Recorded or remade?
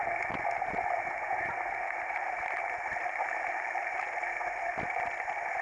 recorded